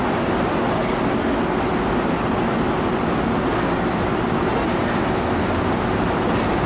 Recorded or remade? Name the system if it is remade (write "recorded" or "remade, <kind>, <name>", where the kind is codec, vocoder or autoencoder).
recorded